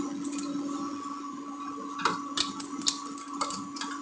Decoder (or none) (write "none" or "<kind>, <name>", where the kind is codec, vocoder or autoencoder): none